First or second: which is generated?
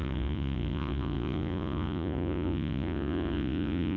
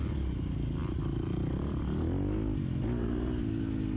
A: first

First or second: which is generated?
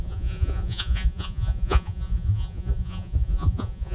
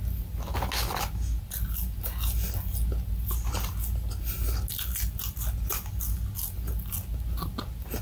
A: first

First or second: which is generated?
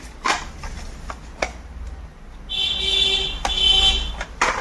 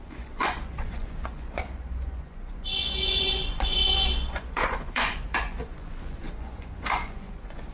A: second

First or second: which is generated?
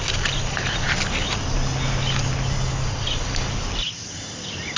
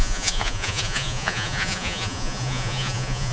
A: second